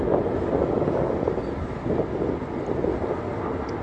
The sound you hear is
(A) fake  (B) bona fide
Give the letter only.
B